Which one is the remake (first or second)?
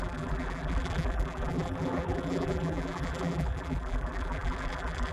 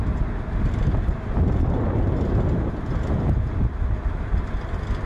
first